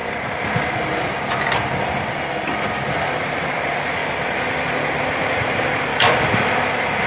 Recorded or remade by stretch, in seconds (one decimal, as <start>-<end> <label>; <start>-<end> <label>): 0.0-7.1 remade

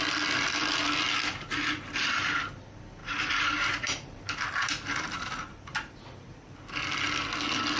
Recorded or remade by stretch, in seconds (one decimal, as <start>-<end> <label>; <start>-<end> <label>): 0.0-3.0 recorded; 3.0-5.2 remade; 5.2-7.8 recorded

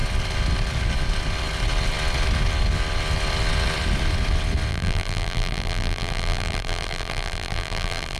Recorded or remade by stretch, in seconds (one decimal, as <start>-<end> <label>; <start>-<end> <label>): 0.0-4.7 recorded; 4.7-8.2 remade

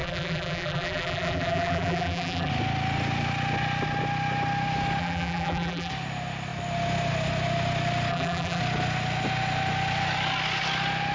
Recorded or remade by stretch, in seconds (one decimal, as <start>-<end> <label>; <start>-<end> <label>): 0.0-2.5 remade; 2.5-5.0 recorded; 5.0-5.9 remade; 5.9-8.1 recorded; 8.1-8.6 remade; 8.6-11.1 recorded